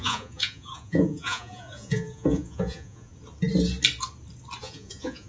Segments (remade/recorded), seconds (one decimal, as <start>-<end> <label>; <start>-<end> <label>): 0.0-3.1 remade; 3.1-4.6 recorded; 4.6-5.3 remade